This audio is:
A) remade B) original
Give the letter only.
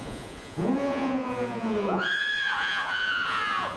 A